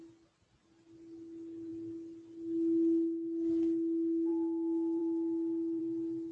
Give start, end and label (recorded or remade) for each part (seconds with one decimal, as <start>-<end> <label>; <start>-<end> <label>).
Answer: 0.0-6.3 recorded